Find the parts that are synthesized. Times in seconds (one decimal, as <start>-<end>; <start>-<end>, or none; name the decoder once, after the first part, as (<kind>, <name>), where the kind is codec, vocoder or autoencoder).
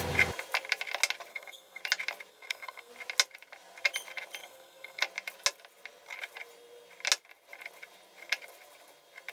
1.3-1.8 (codec, SNAC); 2.3-2.9; 4.4-5.0